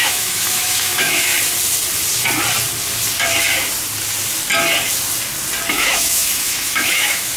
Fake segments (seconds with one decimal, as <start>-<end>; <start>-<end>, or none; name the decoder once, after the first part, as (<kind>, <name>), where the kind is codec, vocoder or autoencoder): 0.0-1.3 (autoencoder, DAC-VAE); 5.7-7.4